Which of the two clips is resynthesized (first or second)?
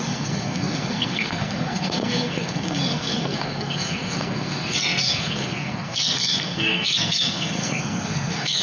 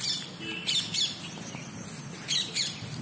first